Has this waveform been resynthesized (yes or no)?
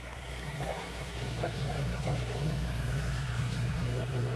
yes